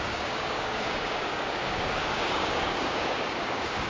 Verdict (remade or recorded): remade